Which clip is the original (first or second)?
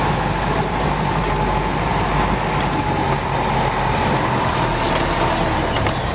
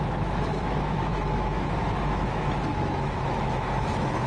first